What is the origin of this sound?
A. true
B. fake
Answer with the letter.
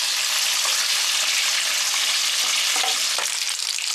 A